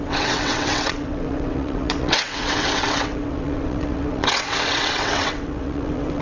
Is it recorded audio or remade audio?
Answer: remade